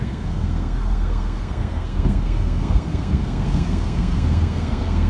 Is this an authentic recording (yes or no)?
no